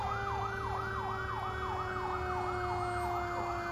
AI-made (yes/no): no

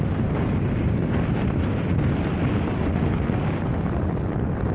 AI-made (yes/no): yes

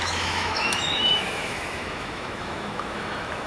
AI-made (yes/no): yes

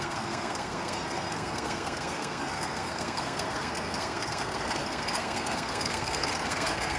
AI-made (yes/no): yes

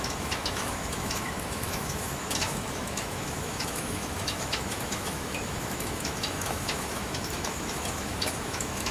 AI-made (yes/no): yes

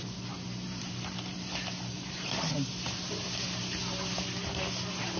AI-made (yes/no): no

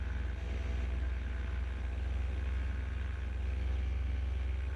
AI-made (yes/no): no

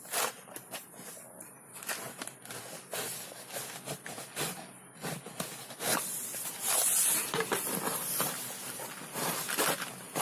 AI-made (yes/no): no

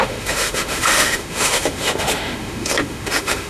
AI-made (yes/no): yes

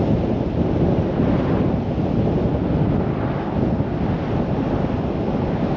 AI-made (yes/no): no